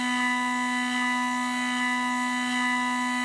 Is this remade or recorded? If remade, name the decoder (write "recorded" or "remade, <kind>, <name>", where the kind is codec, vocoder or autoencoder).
recorded